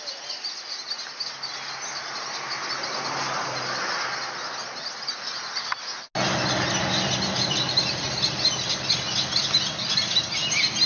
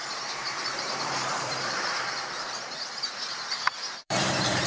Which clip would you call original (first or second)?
first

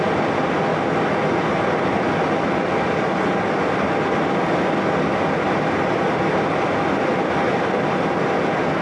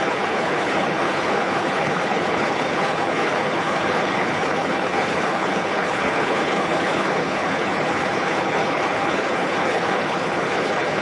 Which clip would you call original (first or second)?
first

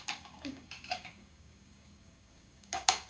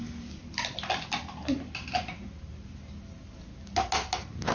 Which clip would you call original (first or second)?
second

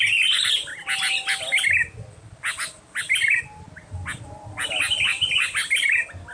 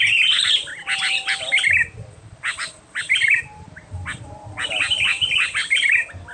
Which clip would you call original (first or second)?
first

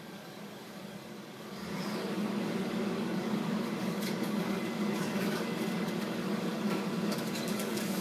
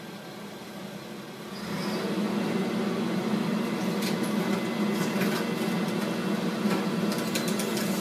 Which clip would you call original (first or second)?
second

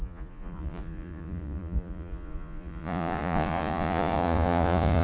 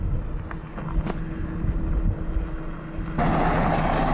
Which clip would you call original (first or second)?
second